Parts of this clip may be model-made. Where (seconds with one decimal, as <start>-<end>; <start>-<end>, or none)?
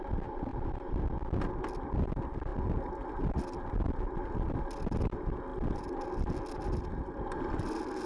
none